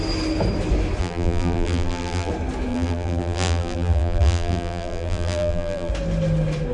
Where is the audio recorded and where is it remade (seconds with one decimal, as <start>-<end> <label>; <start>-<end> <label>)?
0.0-1.0 recorded; 1.0-2.3 remade; 2.3-2.7 recorded; 2.7-5.9 remade; 5.9-6.7 recorded